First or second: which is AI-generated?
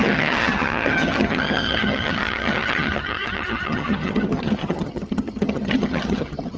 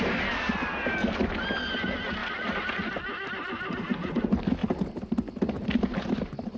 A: first